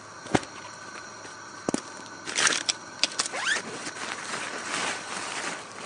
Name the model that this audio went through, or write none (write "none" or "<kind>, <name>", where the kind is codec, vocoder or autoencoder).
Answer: none